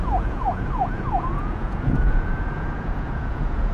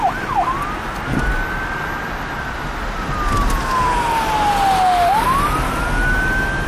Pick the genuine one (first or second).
second